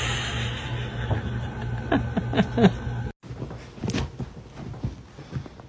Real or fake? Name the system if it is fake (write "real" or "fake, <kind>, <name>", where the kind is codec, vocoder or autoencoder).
real